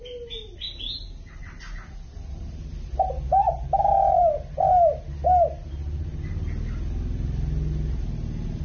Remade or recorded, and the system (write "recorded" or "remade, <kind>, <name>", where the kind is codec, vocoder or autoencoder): recorded